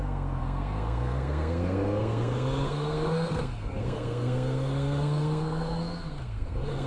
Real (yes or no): no